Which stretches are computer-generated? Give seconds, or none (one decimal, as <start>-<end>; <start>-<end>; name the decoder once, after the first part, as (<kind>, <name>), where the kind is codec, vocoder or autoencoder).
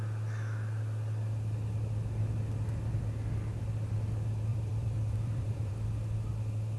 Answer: 4.5-5.7 (vocoder, BigVGAN v2)